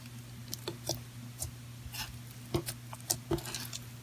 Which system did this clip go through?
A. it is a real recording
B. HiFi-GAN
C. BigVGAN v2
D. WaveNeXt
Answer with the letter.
A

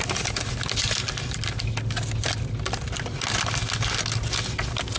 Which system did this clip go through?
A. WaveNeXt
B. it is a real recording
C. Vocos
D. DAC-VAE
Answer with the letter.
B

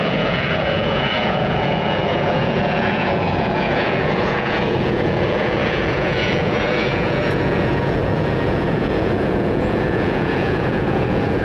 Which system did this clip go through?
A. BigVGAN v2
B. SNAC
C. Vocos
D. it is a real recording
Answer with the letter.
C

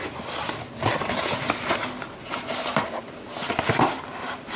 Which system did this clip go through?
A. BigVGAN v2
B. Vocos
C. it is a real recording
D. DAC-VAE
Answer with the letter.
C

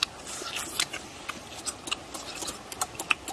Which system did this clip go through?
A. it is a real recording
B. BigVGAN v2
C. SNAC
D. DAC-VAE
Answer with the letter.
A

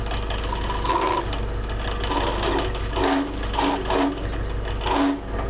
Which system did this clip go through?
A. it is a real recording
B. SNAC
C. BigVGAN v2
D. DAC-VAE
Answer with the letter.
A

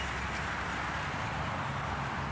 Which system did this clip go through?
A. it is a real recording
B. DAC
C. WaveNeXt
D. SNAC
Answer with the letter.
A